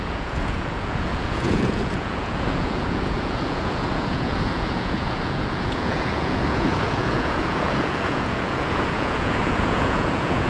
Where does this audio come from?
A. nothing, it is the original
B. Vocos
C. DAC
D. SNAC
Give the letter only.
B